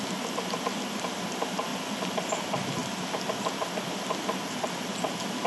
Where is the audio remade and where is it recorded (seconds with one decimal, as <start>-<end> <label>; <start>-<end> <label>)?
0.0-5.5 recorded